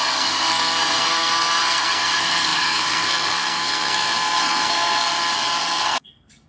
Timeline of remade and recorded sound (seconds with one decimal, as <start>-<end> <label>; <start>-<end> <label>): 0.0-5.1 remade; 5.1-5.6 recorded; 5.6-6.5 remade